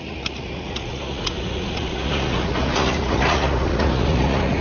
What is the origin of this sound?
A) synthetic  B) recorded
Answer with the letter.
A